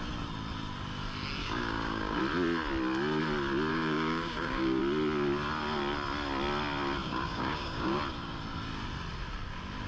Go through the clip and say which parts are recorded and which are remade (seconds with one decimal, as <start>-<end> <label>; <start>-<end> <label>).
0.0-1.4 recorded; 1.4-2.2 remade; 2.2-3.7 recorded; 3.7-4.8 remade; 4.8-7.0 recorded; 7.0-8.0 remade; 8.0-9.9 recorded